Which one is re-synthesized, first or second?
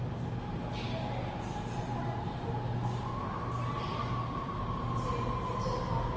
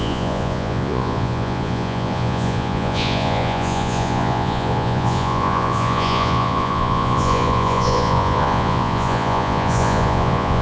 second